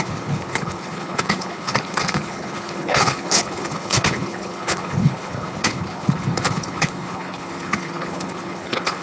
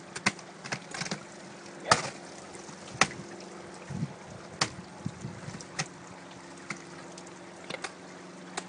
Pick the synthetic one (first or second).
first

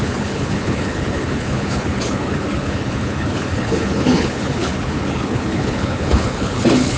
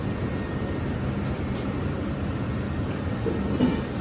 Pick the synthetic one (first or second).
first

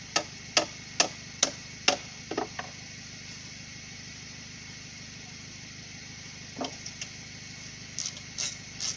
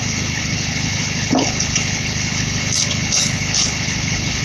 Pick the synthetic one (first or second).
second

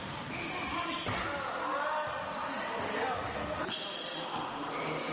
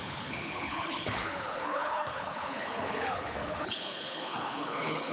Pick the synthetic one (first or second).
second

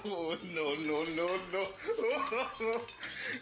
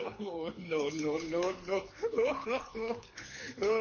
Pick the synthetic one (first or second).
second